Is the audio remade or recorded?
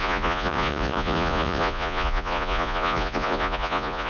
remade